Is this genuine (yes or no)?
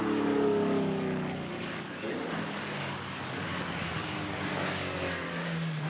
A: no